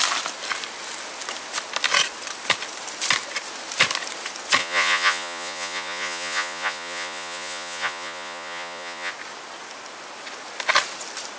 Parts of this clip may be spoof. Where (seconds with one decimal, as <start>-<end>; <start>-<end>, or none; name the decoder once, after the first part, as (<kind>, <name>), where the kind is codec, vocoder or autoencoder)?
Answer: 4.6-9.1 (vocoder, Vocos)